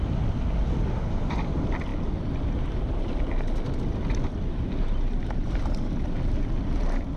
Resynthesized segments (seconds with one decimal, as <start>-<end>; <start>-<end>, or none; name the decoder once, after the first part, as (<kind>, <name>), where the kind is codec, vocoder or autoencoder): none